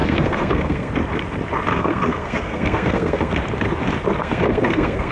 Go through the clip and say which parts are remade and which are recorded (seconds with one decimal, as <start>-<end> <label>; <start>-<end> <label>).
0.0-0.9 remade; 0.9-1.7 recorded; 1.7-3.3 remade; 3.3-4.2 recorded; 4.2-5.1 remade